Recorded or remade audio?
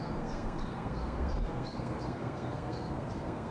remade